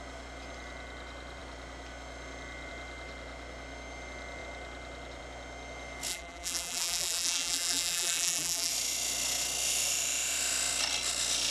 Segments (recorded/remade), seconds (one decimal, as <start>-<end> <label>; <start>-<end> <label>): 0.0-6.1 recorded; 6.1-8.7 remade; 8.7-11.5 recorded